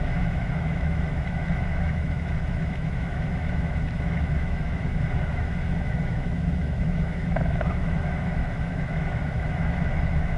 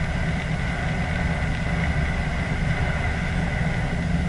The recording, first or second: second